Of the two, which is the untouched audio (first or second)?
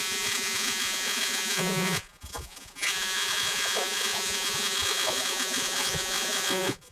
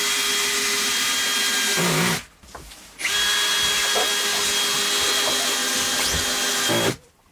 second